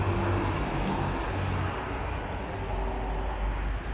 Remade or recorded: recorded